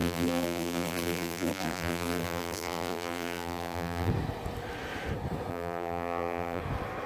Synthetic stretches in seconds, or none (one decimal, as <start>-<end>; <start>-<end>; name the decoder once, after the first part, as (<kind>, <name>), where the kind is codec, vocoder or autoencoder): 0.0-4.1 (vocoder, BigVGAN v2); 5.5-6.6